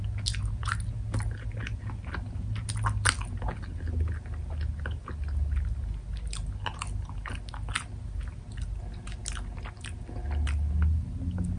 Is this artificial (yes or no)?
no